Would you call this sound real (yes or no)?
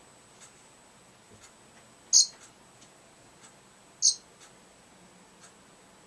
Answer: yes